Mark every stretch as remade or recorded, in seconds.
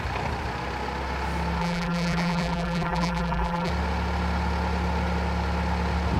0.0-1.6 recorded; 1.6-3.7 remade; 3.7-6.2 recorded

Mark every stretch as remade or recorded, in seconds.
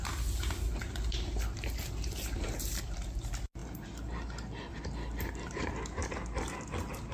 0.0-7.1 recorded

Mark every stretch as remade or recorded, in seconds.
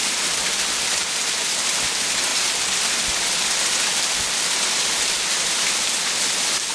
0.0-6.7 recorded